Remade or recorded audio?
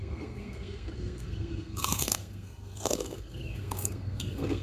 remade